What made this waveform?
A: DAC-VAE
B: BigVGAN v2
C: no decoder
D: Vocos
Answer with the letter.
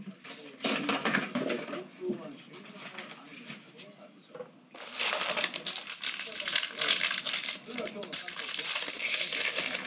C